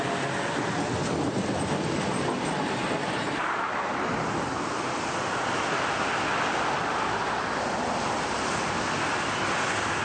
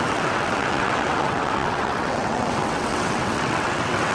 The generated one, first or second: second